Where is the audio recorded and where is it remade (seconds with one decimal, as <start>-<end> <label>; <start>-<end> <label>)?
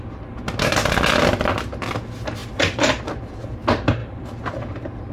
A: 0.0-2.4 recorded; 2.4-3.0 remade; 3.0-4.0 recorded; 4.0-5.1 remade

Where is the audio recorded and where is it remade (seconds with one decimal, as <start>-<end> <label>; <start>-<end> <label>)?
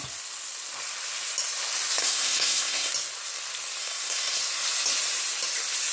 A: 0.0-2.0 recorded; 2.0-2.9 remade; 2.9-3.8 recorded; 3.8-4.4 remade; 4.4-5.9 recorded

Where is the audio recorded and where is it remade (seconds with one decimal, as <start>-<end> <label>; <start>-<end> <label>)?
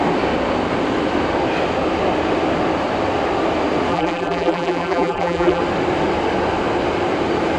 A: 0.0-3.9 recorded; 3.9-5.6 remade; 5.6-7.6 recorded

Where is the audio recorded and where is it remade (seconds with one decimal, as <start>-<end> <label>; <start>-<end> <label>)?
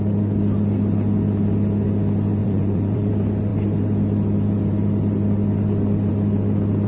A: 0.0-2.4 recorded; 2.4-3.1 remade; 3.1-6.9 recorded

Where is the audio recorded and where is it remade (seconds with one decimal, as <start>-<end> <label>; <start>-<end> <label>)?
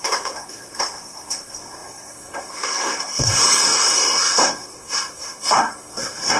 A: 0.0-6.4 remade